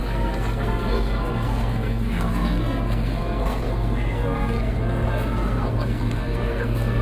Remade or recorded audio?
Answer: remade